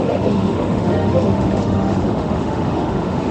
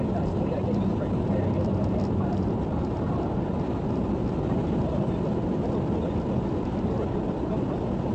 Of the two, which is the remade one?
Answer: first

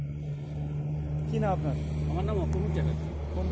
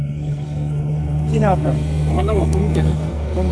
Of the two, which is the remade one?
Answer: second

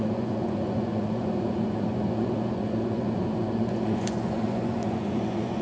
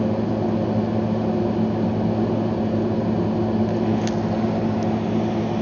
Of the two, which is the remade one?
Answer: first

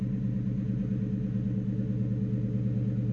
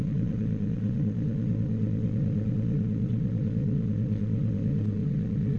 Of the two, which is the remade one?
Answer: second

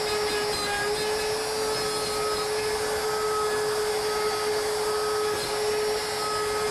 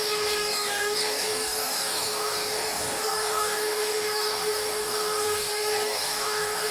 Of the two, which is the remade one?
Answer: second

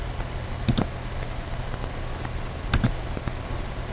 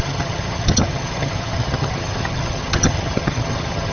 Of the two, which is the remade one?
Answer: second